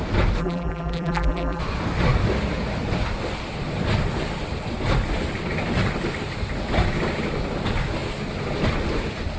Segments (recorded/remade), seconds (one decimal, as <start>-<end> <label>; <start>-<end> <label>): 0.0-0.4 recorded; 0.4-1.6 remade; 1.6-9.4 recorded